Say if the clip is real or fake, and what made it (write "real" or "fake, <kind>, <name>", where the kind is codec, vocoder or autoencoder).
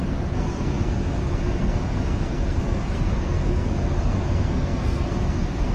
fake, codec, SNAC